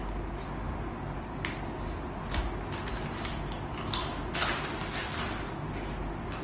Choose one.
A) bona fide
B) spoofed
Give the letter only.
A